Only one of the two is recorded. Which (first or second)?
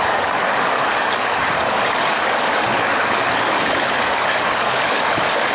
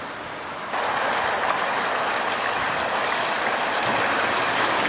second